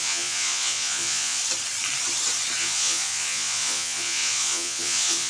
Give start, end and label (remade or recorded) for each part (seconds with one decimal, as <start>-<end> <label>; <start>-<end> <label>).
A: 0.0-1.4 remade; 1.4-2.6 recorded; 2.6-5.3 remade